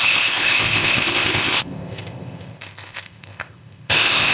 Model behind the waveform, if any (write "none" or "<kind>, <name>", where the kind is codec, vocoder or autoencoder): codec, ZipCodec